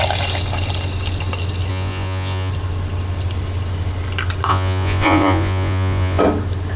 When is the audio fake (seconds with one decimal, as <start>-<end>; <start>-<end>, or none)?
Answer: 1.7-2.5; 4.5-6.2